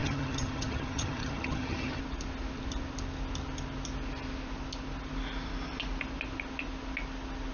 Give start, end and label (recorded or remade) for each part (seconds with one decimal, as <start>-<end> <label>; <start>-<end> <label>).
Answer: 0.0-2.0 remade; 2.0-7.5 recorded